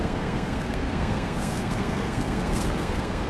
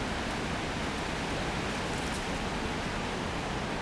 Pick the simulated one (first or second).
first